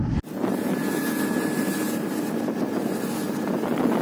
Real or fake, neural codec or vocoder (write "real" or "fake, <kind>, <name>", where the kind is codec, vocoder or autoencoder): real